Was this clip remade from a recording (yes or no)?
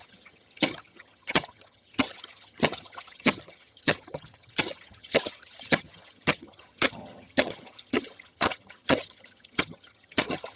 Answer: yes